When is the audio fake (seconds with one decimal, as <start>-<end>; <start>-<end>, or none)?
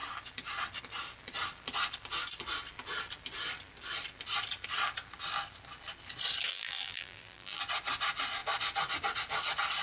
6.5-7.6